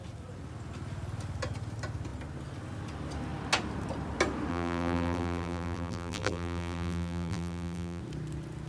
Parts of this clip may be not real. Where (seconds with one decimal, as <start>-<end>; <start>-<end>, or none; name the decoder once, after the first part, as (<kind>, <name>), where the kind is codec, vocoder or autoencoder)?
4.5-8.0 (vocoder, BigVGAN v2)